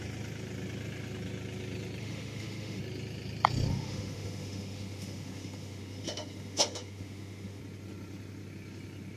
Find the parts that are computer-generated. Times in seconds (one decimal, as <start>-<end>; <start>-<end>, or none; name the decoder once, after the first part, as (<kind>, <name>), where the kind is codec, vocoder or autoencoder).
2.0-2.8 (autoencoder, DAC-VAE); 3.7-7.6